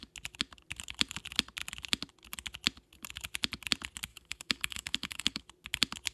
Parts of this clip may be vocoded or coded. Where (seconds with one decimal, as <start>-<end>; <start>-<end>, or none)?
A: 4.1-5.4